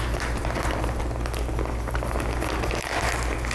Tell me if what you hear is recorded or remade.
recorded